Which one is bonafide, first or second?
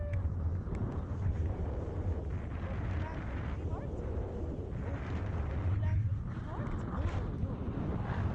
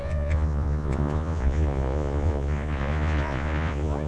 first